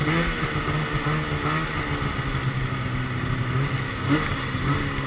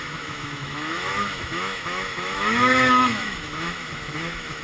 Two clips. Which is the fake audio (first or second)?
second